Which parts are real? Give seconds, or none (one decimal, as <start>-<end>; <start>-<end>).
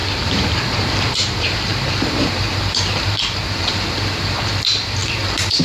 none